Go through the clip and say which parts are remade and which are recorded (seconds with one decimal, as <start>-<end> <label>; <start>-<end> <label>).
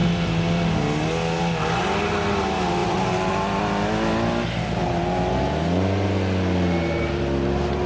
0.0-2.8 recorded; 2.8-3.3 remade; 3.3-7.9 recorded